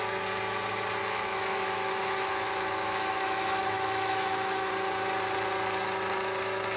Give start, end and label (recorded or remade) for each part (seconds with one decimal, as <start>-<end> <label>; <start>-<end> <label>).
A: 0.0-1.0 recorded; 1.0-4.7 remade; 4.7-6.8 recorded